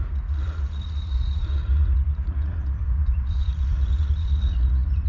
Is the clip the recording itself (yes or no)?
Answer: no